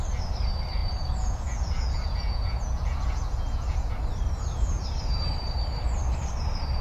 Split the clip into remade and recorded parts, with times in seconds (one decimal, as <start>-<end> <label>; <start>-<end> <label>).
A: 0.0-0.8 recorded; 0.8-3.9 remade; 3.9-6.8 recorded